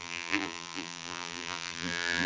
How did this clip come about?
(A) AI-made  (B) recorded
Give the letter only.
A